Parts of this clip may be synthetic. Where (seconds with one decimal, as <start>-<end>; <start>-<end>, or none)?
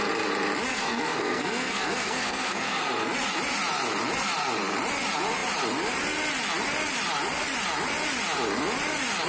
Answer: 0.7-2.8